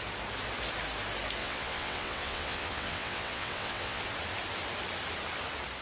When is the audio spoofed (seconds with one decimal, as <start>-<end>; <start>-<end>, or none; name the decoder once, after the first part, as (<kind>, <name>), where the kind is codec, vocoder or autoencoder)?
1.4-4.0 (vocoder, WaveNeXt)